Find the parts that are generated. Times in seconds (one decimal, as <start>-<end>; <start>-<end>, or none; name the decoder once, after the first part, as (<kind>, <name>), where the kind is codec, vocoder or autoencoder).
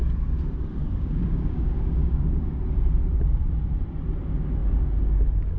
0.8-2.6 (codec, DAC)